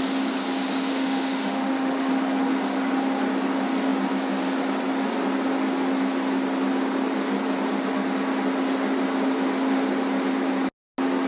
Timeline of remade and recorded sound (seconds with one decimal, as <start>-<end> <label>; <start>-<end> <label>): 0.0-0.9 recorded; 0.9-2.1 remade; 2.1-11.3 recorded